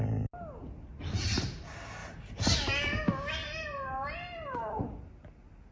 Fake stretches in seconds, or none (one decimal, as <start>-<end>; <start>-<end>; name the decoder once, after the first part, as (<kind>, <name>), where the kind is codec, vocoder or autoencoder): 2.0-3.0 (vocoder, BigVGAN v2); 3.4-4.8